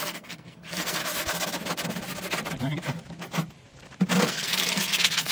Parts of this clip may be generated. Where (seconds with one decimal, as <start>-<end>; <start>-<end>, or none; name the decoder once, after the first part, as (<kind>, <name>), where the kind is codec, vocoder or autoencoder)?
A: 0.0-1.0 (codec, SNAC); 4.2-5.3